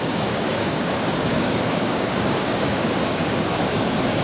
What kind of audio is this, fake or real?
fake